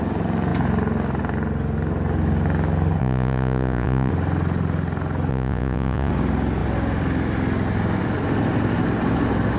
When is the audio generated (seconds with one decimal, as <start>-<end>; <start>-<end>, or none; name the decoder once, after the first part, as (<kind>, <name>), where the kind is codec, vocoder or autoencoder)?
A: 3.0-4.1 (vocoder, Vocos); 5.3-6.1